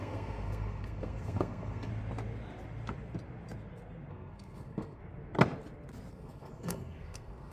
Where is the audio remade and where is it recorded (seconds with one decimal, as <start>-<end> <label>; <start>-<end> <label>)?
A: 0.0-1.9 remade; 1.9-4.1 recorded; 4.1-5.0 remade; 5.0-6.1 recorded; 6.1-7.5 remade